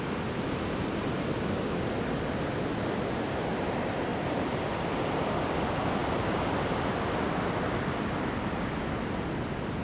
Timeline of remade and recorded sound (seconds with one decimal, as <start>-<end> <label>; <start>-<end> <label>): 0.0-9.8 recorded